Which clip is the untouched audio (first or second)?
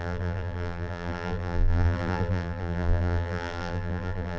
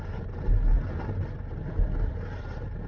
second